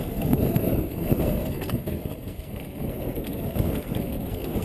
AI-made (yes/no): yes